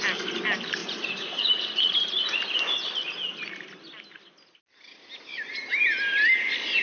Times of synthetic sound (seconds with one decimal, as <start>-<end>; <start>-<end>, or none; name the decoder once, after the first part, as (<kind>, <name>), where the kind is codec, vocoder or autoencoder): 0.8-1.9 (vocoder, Vocos)